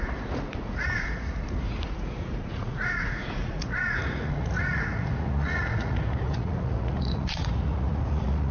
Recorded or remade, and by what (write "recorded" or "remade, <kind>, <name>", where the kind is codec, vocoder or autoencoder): remade, vocoder, Vocos